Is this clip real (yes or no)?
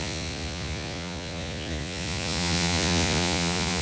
no